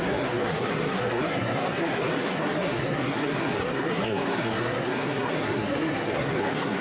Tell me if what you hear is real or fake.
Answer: fake